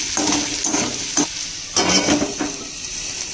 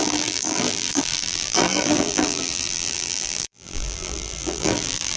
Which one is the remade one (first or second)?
second